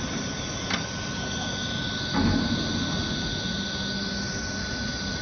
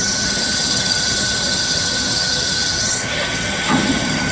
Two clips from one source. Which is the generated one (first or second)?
second